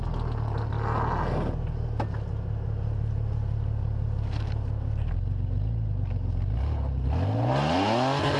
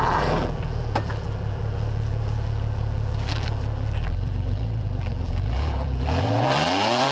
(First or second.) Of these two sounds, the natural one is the first